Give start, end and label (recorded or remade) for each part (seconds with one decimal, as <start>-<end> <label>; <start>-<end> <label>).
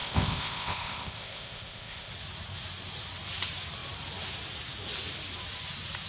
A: 0.0-2.1 remade; 2.1-6.1 recorded